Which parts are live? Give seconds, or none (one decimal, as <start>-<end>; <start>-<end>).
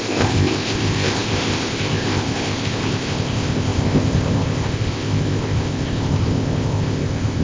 none